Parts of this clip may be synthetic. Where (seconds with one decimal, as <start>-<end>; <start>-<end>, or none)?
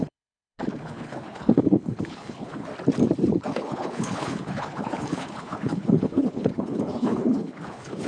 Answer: 0.0-2.7; 3.3-8.1